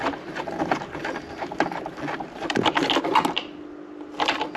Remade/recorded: recorded